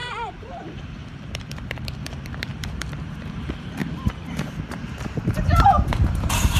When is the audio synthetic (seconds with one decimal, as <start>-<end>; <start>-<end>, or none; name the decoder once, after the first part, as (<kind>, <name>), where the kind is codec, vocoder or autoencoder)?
0.0-3.8 (vocoder, BigVGAN v2); 4.9-6.6